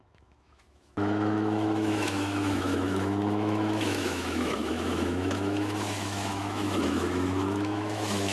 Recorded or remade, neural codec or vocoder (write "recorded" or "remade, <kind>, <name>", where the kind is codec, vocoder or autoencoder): remade, autoencoder, DAC-VAE